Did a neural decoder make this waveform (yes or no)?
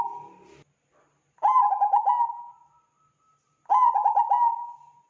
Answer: no